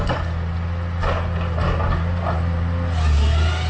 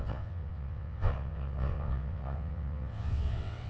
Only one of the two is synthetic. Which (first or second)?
second